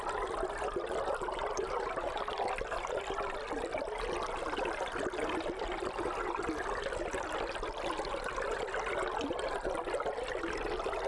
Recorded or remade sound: recorded